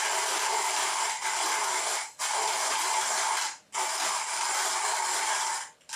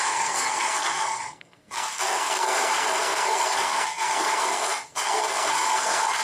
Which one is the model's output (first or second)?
second